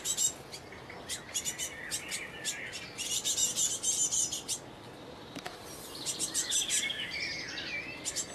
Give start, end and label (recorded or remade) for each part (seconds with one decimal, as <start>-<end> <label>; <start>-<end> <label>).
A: 0.0-8.3 recorded